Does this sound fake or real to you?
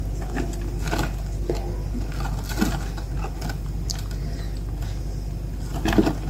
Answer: real